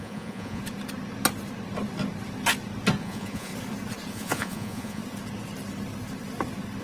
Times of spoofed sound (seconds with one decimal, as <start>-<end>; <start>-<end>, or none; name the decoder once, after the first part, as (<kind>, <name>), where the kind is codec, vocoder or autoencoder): 0.0-0.6 (vocoder, Vocos); 3.0-3.5; 4.1-5.0